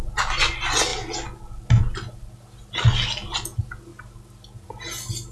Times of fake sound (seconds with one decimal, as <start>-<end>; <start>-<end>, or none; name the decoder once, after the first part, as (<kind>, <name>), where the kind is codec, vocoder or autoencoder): none